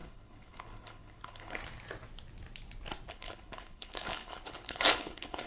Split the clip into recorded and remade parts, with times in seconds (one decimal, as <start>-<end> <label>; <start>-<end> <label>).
0.0-1.6 remade; 1.6-3.1 recorded; 3.1-5.5 remade